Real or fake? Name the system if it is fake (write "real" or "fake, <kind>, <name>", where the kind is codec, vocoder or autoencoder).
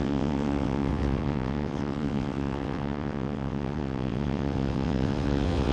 fake, vocoder, WaveNeXt